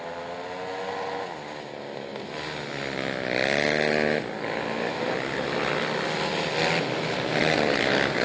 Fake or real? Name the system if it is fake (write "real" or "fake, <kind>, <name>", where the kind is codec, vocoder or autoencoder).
real